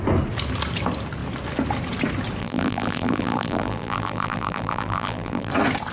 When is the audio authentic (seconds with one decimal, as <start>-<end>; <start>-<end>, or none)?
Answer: 0.0-2.4; 5.5-5.9